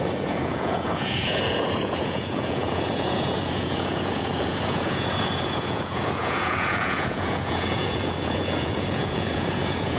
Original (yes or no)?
no